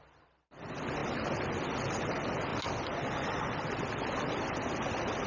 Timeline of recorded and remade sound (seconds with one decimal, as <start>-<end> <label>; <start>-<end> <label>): 0.0-5.3 recorded